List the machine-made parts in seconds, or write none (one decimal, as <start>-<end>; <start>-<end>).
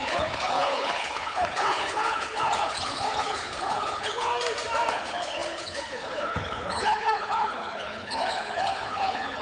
0.0-4.3; 4.9-9.4